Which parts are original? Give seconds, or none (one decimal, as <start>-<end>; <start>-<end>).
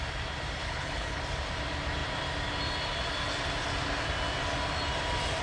0.0-0.6; 1.2-5.4